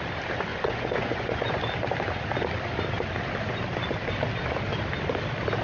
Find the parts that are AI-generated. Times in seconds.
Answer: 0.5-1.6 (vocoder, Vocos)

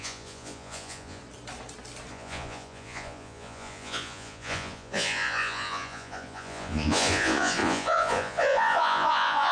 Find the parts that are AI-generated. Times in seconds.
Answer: 0.0-1.2 (vocoder, Vocos); 2.1-9.5

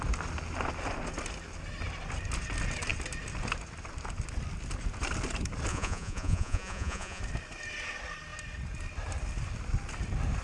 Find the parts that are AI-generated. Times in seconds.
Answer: 5.7-7.2 (vocoder, Vocos)

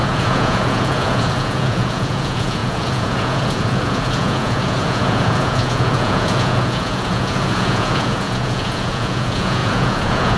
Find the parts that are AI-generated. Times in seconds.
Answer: 0.0-10.4 (vocoder, Vocos)

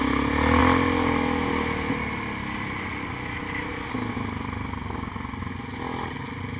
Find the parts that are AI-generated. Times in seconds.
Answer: none